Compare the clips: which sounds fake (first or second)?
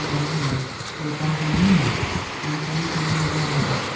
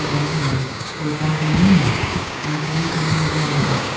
second